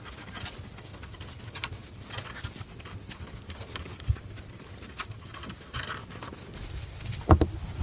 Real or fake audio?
real